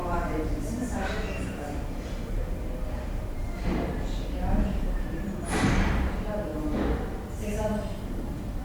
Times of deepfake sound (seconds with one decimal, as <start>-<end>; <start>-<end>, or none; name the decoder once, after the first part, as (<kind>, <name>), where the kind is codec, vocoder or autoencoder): 0.0-8.6 (vocoder, BigVGAN v2)